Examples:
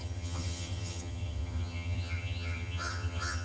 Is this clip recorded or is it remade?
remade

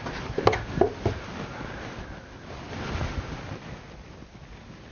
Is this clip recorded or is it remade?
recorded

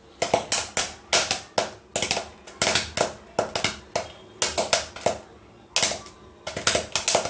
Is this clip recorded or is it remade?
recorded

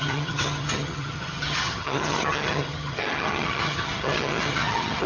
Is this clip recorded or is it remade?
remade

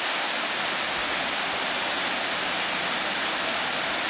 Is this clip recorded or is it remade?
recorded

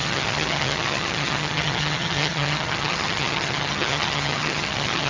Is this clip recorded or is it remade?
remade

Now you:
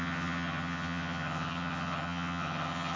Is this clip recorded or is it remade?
remade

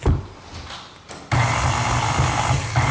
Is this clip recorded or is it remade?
recorded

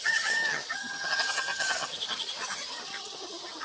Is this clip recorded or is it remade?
remade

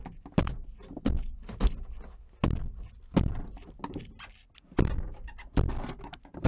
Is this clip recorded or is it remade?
recorded